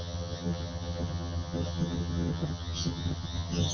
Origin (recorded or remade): remade